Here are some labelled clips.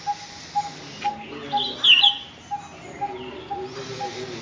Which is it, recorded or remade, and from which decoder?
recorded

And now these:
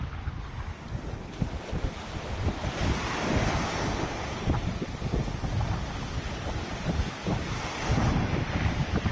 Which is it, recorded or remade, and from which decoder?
recorded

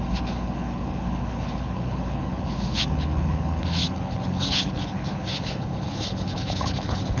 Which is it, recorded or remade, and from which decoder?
remade, codec, HILCodec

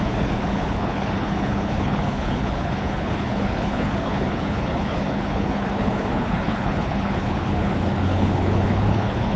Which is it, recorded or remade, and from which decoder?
remade, codec, HILCodec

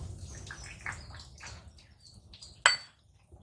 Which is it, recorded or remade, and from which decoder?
recorded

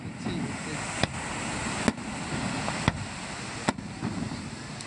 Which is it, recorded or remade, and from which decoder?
recorded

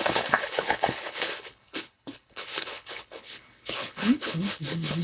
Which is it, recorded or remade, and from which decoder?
remade, codec, HILCodec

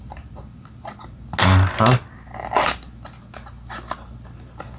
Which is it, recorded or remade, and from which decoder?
recorded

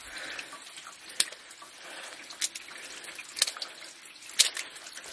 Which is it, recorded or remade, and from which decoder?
recorded